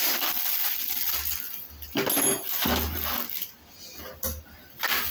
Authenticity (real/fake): real